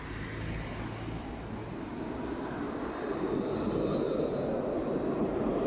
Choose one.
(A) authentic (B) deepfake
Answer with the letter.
A